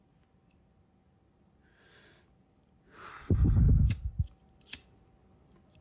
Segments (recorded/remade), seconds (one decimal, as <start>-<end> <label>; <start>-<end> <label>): 0.0-3.1 recorded; 3.1-3.9 remade; 3.9-5.8 recorded